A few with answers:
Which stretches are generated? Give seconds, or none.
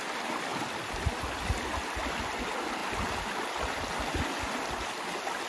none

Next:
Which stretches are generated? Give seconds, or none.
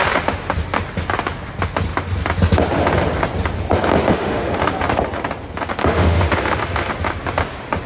4.1-4.6 (autoencoder, DAC-VAE); 5.8-6.9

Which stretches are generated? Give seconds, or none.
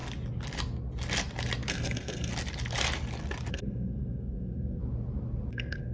1.7-2.3 (codec, SNAC); 3.5-4.8; 5.5-5.9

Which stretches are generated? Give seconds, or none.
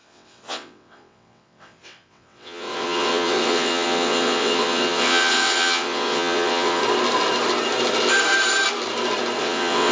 0.0-6.8 (vocoder, WaveNeXt); 9.4-9.9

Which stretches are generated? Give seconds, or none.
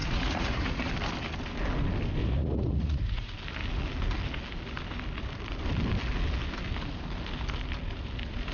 0.0-0.9 (vocoder, Vocos); 2.2-3.3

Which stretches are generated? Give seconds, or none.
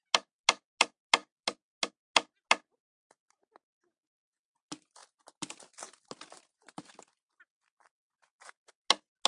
none